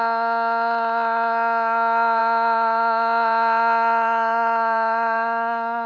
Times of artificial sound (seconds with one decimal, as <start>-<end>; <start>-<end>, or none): none